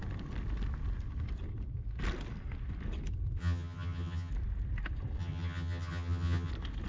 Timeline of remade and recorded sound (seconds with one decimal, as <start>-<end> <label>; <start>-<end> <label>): 0.0-3.4 recorded; 3.4-4.3 remade; 4.3-5.2 recorded; 5.2-6.5 remade; 6.5-6.9 recorded